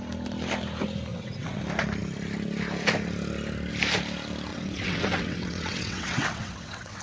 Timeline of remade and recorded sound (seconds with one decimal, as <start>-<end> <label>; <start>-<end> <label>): 0.0-1.1 recorded; 1.1-1.6 remade; 1.6-4.5 recorded; 4.5-7.0 remade